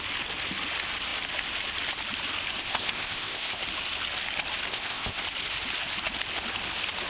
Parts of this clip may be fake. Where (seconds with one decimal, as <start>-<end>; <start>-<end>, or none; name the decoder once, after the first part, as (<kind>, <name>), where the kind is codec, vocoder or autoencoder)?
2.6-3.6 (codec, ZipCodec); 4.7-5.2